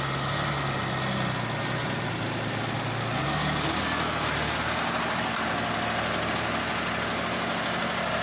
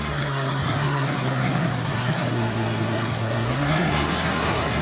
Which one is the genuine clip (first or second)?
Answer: first